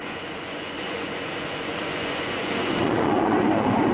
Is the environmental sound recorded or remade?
remade